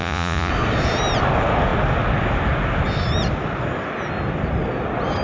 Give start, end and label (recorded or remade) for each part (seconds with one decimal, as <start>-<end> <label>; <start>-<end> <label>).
0.0-0.5 remade; 0.5-5.2 recorded